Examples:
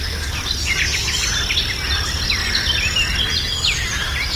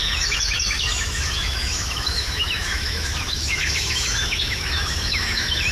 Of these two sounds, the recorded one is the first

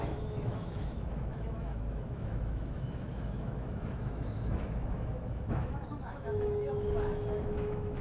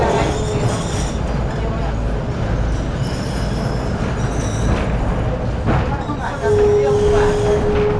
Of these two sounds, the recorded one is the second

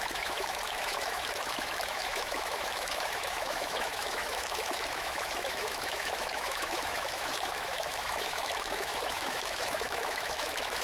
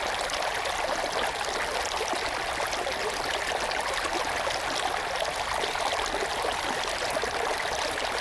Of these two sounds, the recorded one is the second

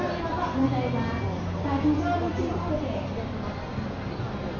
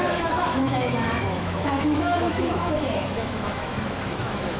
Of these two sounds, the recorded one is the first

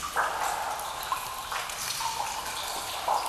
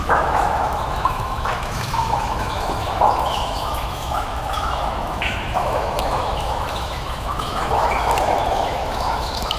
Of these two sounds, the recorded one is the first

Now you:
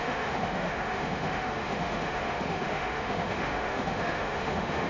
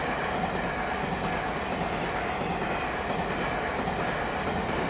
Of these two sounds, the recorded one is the second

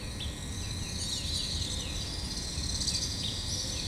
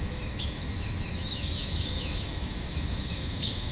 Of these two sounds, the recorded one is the first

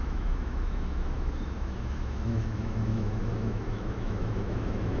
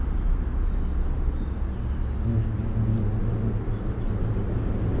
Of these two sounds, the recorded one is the second